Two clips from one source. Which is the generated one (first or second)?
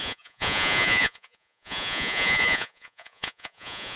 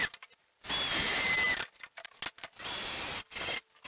first